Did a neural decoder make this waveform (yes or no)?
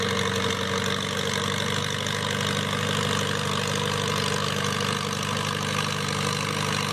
no